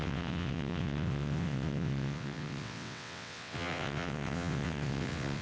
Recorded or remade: remade